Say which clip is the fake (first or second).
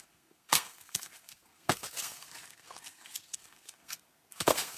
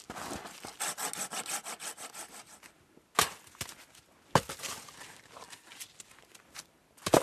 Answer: first